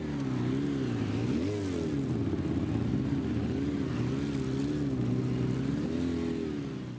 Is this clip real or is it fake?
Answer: real